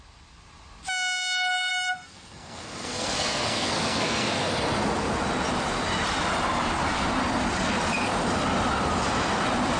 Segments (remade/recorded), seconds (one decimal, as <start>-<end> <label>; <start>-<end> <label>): 0.0-1.7 recorded; 1.7-4.5 remade; 4.5-9.8 recorded